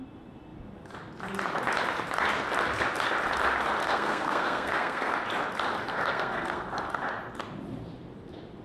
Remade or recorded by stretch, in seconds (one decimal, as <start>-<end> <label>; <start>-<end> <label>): 0.0-3.8 recorded; 3.8-5.1 remade; 5.1-5.9 recorded; 5.9-6.6 remade; 6.6-8.6 recorded